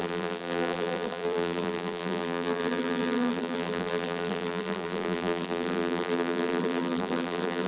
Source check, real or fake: fake